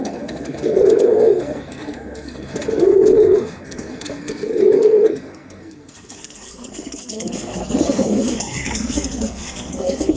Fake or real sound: fake